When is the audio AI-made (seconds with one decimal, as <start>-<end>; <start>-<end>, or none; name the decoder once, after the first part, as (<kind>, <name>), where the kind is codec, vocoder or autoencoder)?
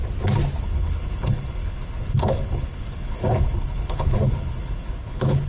0.6-5.5 (codec, HILCodec)